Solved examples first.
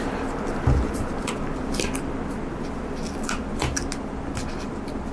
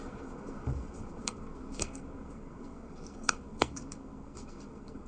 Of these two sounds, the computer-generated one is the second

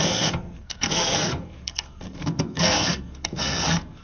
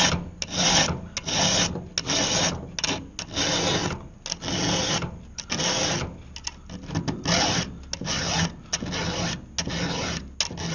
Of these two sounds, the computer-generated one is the first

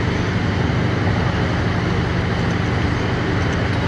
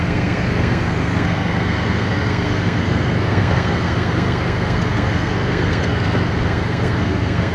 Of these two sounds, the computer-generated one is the second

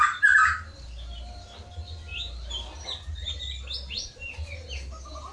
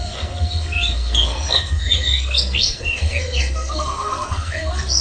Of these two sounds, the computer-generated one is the second